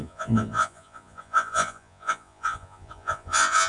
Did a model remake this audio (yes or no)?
yes